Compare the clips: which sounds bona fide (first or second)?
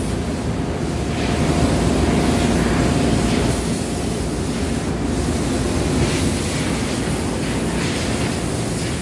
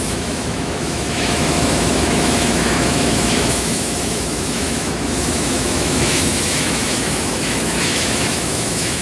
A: first